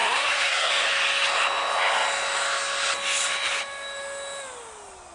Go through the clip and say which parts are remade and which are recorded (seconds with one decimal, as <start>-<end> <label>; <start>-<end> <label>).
0.0-0.7 remade; 0.7-5.1 recorded